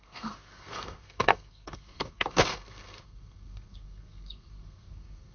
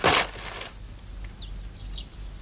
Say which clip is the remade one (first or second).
first